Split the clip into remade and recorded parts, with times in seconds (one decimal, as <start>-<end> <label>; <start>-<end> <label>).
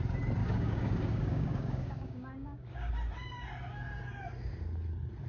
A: 0.0-0.4 recorded; 0.4-2.9 remade; 2.9-5.3 recorded